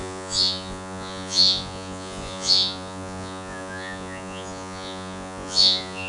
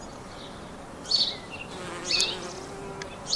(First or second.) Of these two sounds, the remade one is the first